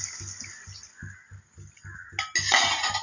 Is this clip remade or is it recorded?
recorded